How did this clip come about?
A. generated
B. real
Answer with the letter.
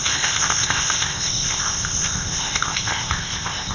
A